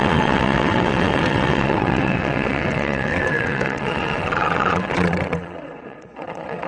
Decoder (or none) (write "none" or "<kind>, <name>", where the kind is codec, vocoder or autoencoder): vocoder, WaveNeXt